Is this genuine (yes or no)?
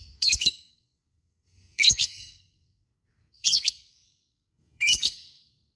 no